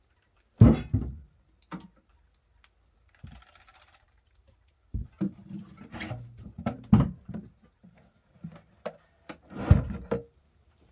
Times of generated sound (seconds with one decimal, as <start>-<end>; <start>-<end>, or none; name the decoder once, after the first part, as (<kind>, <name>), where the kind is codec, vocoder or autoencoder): 3.7-5.6 (vocoder, BigVGAN v2)